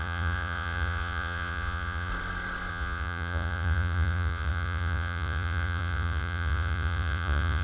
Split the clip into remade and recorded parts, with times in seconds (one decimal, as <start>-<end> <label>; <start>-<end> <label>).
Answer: 0.0-2.1 remade; 2.1-2.7 recorded; 2.7-7.6 remade